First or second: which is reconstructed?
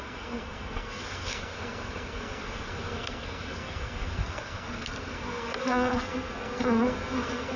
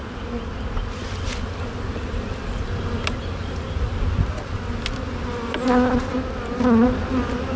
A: first